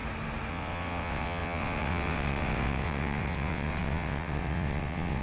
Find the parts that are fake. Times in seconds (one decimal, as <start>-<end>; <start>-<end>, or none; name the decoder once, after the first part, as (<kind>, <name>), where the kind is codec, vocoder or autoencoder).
0.5-5.2 (vocoder, WaveNeXt)

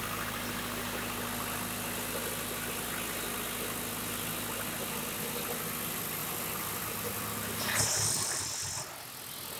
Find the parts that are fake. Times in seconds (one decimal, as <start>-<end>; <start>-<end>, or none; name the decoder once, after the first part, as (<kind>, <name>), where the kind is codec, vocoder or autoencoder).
6.2-8.4 (vocoder, BigVGAN v2)